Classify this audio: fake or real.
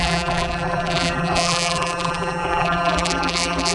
fake